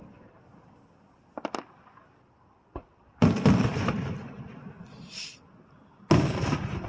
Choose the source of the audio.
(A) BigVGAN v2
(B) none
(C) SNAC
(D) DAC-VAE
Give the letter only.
B